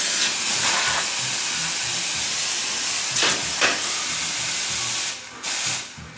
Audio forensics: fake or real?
real